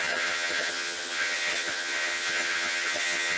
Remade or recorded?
remade